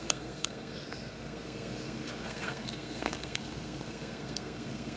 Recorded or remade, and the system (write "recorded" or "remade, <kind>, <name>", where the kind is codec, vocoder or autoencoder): remade, codec, SNAC